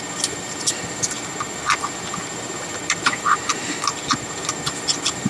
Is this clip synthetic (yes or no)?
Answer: no